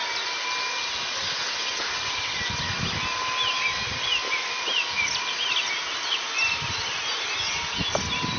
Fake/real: real